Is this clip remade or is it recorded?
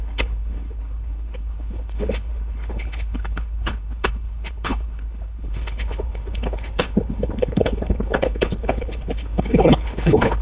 remade